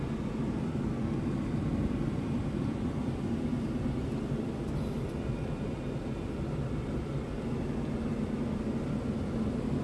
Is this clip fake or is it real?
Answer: real